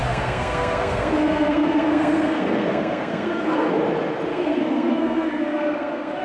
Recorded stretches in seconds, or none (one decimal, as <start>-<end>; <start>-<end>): 3.7-4.3